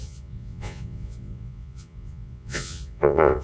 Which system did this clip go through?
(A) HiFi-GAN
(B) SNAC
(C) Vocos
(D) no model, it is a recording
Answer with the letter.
C